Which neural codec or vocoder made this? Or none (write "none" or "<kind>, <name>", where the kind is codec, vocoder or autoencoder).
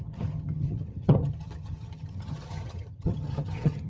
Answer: vocoder, HiFi-GAN